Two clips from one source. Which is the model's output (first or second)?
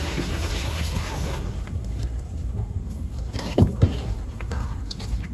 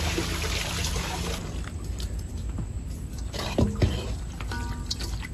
first